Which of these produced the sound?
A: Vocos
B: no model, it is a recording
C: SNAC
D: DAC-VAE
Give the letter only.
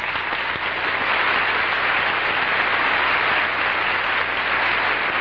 B